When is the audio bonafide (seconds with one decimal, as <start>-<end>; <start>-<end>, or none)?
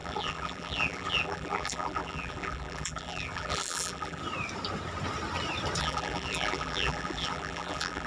4.2-5.8